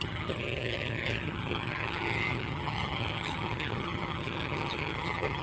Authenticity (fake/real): fake